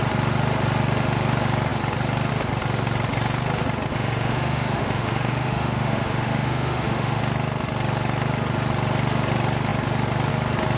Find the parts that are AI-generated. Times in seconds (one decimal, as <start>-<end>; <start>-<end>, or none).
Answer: 3.9-7.2